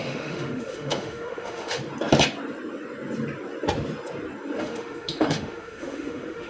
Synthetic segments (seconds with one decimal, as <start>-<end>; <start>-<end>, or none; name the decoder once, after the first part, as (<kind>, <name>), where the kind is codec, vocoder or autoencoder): 0.0-1.8 (autoencoder, DAC-VAE); 4.6-6.5

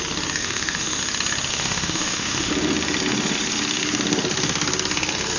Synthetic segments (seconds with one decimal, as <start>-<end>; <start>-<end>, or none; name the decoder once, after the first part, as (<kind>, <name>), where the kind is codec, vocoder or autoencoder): 0.4-1.0 (autoencoder, DAC-VAE); 1.5-2.5

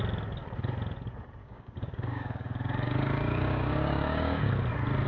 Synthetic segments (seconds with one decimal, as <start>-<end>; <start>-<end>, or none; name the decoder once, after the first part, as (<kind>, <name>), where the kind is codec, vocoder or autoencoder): 1.4-4.5 (codec, DAC)

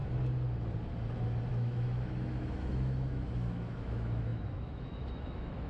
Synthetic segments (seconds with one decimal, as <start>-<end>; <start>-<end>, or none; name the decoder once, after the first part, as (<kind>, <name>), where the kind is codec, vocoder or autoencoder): 1.5-5.7 (autoencoder, DAC-VAE)

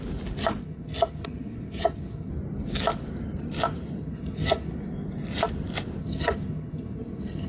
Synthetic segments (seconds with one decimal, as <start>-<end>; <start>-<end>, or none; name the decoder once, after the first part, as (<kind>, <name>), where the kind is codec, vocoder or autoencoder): 0.6-2.3 (vocoder, HiFi-GAN); 4.0-4.7; 6.0-7.5

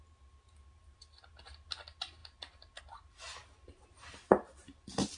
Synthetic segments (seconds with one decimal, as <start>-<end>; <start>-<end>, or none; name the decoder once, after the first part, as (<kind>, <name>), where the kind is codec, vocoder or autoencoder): none

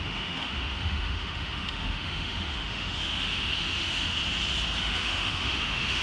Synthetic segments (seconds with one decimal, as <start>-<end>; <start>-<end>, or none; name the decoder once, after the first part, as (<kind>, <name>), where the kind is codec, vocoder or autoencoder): 0.0-4.2 (autoencoder, DAC-VAE); 4.8-6.0

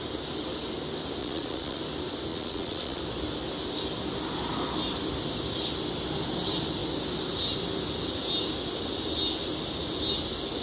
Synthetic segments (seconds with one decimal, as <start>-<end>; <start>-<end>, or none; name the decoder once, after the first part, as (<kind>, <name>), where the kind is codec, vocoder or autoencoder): 1.2-1.8 (vocoder, Vocos); 2.3-3.0